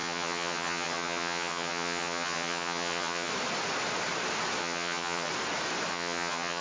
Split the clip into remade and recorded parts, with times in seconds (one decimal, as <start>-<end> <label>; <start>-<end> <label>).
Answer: 0.0-3.3 remade; 3.3-4.6 recorded; 4.6-5.3 remade; 5.3-5.9 recorded; 5.9-6.6 remade